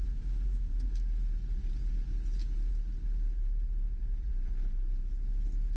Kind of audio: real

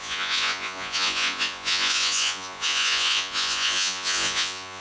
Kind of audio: fake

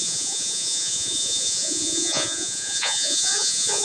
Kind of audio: fake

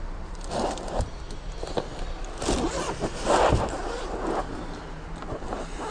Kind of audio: real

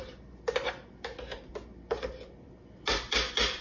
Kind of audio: real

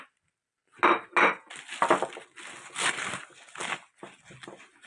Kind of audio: real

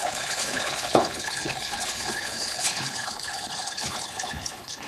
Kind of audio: fake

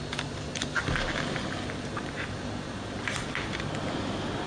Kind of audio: real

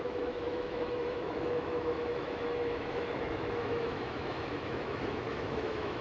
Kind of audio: fake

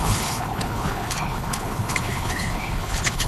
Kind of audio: fake